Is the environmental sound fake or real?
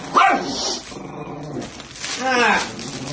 real